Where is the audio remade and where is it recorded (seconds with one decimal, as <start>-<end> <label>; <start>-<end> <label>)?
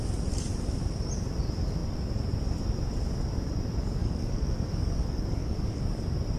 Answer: 0.0-4.0 recorded; 4.0-5.8 remade; 5.8-6.4 recorded